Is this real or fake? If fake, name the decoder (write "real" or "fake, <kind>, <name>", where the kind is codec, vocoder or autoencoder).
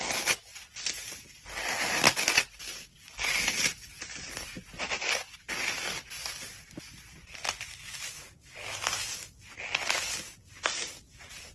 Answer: real